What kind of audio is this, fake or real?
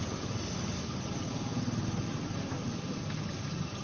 real